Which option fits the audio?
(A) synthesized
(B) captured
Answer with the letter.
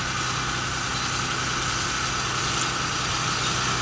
B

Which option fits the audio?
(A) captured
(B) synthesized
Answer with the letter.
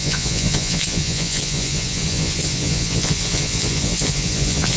B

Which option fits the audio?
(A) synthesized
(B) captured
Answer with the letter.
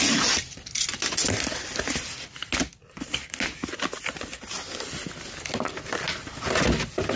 B